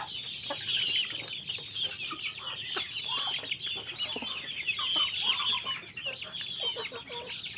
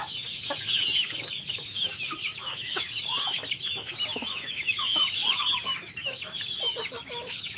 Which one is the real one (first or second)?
first